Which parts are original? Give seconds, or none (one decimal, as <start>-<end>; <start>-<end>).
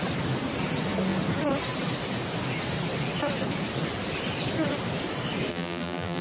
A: 0.0-5.5